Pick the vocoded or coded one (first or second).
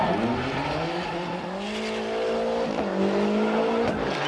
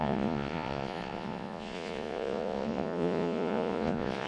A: second